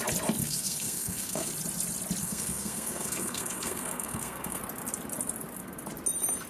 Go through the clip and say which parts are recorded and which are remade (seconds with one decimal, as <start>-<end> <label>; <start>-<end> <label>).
0.0-0.4 recorded; 0.4-1.5 remade; 1.5-2.2 recorded; 2.2-4.6 remade; 4.6-6.5 recorded

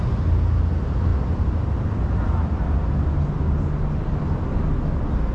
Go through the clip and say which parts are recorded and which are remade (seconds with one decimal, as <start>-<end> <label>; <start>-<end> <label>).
0.0-5.3 recorded

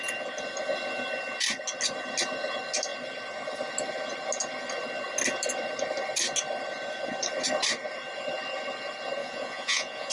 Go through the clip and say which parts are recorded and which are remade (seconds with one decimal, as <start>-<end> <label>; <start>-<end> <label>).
0.0-9.2 recorded; 9.2-10.1 remade